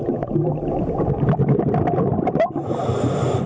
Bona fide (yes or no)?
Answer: yes